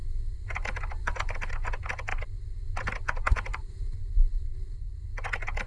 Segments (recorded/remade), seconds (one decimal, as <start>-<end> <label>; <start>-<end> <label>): 0.0-3.5 recorded; 3.5-5.0 remade; 5.0-5.7 recorded